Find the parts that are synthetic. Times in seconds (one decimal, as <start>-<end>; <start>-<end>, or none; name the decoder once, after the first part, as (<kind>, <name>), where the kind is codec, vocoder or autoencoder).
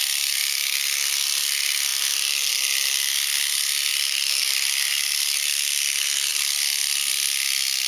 none